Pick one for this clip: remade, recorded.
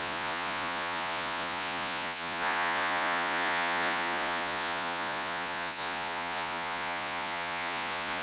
remade